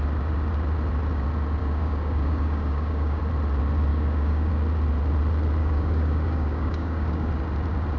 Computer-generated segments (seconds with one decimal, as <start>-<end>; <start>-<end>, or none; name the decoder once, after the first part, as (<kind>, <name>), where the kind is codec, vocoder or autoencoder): 1.6-3.2 (codec, DAC); 3.9-4.5; 5.6-7.3